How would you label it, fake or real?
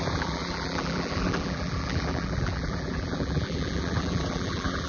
fake